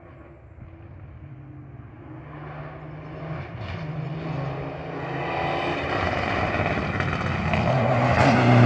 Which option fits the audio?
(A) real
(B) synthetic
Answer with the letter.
A